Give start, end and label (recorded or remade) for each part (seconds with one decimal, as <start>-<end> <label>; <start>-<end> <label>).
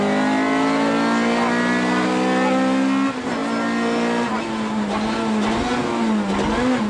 0.0-6.9 recorded